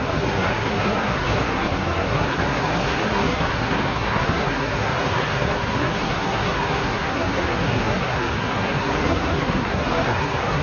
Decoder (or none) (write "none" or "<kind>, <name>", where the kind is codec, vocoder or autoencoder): codec, SNAC